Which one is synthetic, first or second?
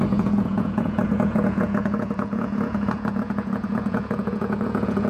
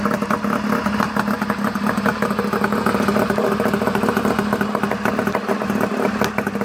first